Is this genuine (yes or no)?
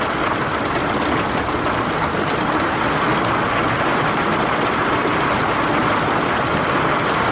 yes